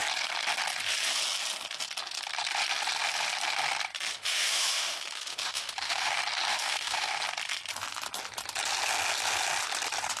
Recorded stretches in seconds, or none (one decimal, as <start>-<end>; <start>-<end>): 0.0-4.1; 6.1-6.5; 7.1-10.2